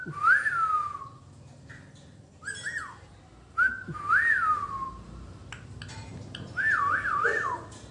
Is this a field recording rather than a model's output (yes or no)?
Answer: yes